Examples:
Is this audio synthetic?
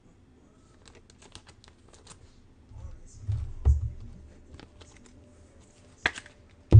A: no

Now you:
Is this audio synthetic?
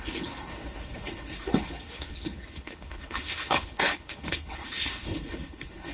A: yes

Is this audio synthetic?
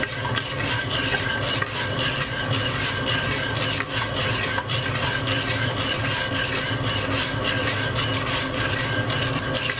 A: no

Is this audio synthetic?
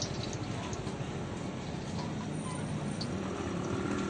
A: no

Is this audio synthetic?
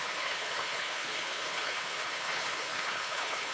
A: yes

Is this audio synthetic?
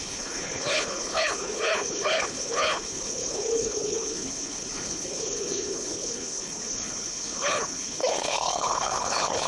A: yes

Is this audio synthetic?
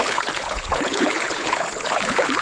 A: yes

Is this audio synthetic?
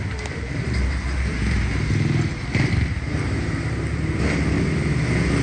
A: no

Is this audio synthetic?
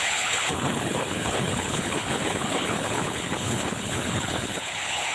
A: yes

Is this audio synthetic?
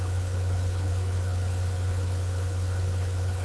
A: yes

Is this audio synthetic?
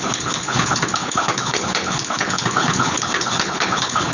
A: yes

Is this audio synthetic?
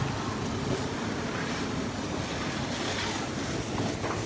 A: no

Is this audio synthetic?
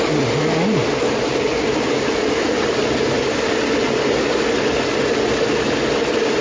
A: no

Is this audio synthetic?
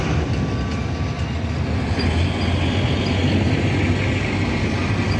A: no